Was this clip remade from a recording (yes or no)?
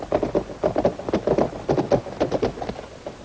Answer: no